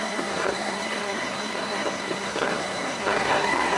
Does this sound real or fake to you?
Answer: fake